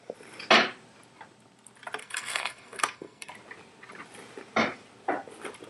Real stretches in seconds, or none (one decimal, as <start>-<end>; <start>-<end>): 0.0-2.0; 3.3-5.7